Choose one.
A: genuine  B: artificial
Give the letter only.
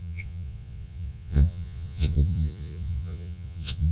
B